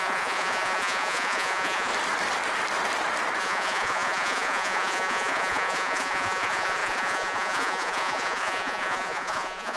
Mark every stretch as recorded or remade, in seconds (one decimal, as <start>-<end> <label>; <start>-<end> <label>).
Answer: 0.0-1.9 remade; 1.9-3.4 recorded; 3.4-9.8 remade